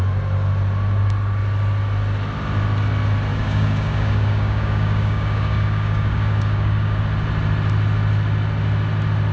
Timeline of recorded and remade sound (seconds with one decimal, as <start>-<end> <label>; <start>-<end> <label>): 0.0-3.3 recorded; 3.3-7.0 remade; 7.0-9.3 recorded